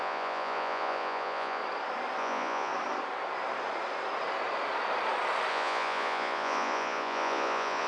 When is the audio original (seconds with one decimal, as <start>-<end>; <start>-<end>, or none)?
1.6-2.2; 2.7-5.5